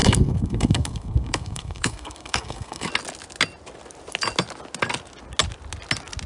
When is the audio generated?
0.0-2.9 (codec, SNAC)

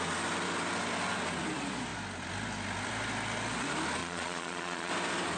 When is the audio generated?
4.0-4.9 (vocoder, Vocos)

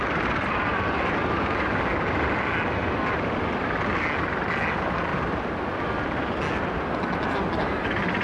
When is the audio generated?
none

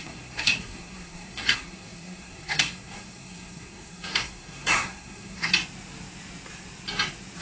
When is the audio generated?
0.0-5.5 (codec, SNAC)

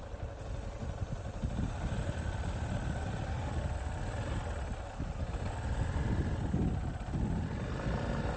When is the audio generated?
none